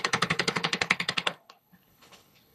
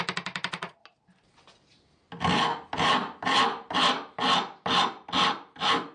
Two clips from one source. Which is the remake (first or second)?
first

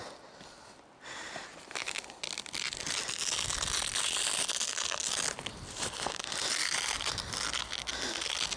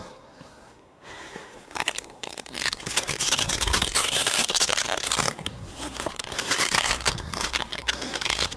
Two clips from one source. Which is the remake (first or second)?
second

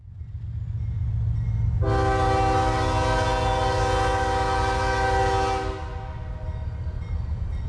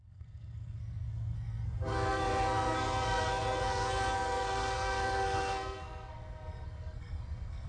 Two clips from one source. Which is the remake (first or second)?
second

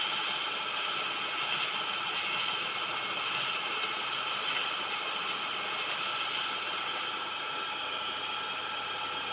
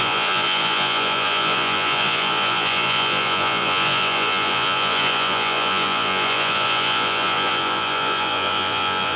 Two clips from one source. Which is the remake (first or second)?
second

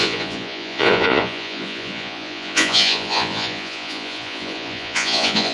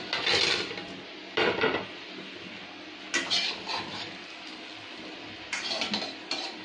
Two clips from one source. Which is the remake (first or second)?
first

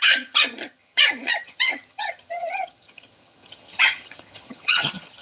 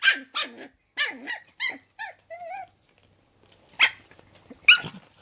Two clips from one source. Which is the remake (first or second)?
first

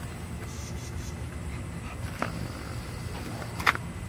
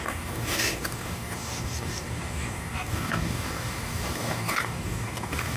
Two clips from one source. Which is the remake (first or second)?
second